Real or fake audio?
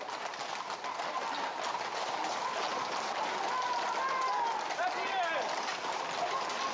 real